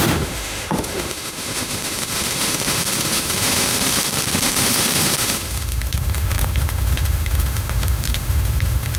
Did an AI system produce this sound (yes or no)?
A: yes